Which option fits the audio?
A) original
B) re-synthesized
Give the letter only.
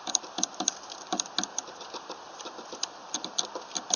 A